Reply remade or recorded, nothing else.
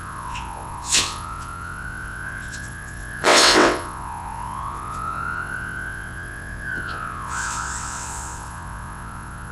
remade